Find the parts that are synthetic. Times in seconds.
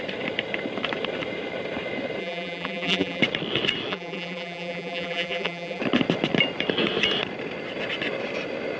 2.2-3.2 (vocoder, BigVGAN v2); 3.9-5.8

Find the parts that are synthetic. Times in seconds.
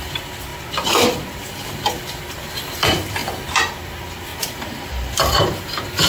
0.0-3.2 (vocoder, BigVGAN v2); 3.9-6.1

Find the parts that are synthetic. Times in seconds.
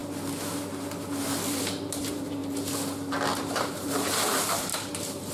1.6-2.4 (vocoder, BigVGAN v2); 3.5-5.3